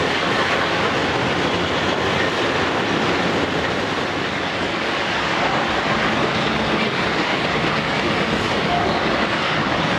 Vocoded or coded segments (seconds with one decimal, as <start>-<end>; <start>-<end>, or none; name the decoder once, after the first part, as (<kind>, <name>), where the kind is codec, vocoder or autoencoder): 0.0-1.0 (codec, DAC); 4.2-10.0